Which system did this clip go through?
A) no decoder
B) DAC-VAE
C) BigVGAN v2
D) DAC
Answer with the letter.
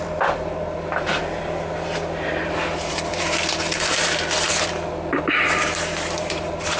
C